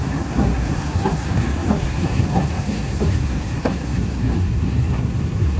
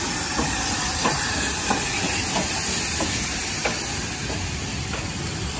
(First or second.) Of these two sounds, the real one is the second